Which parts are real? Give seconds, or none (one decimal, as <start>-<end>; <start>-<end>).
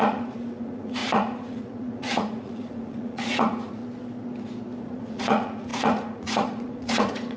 3.8-4.8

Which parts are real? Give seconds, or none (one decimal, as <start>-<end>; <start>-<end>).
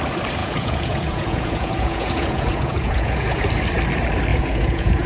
0.0-0.4; 3.5-4.3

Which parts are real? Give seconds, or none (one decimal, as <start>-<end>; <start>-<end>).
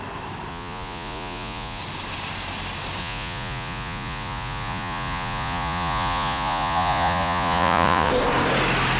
0.0-0.5; 1.8-3.0; 8.1-9.0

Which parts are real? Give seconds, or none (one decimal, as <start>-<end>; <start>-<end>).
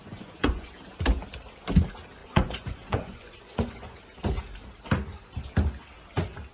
0.7-2.2; 4.0-6.5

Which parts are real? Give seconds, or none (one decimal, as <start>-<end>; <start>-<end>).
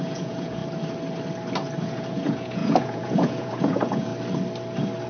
0.6-1.8; 4.1-5.1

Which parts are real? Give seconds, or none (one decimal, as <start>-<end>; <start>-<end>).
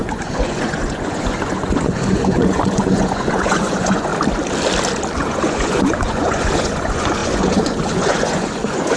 4.1-5.2